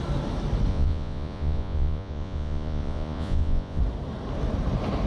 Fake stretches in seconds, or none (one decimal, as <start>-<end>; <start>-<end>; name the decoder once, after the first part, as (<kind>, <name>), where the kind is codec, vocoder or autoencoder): 0.7-3.8 (vocoder, Vocos)